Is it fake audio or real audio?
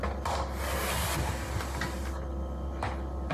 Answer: real